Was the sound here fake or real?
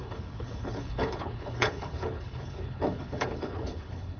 fake